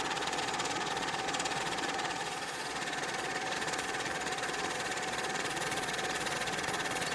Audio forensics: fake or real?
fake